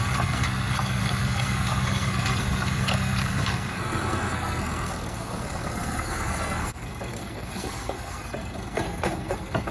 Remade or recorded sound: remade